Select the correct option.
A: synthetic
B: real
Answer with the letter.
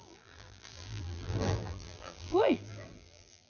A